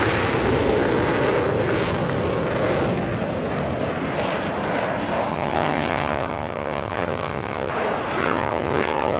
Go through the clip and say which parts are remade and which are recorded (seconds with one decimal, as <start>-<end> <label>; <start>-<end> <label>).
0.0-5.3 recorded; 5.3-7.7 remade; 7.7-8.2 recorded; 8.2-9.2 remade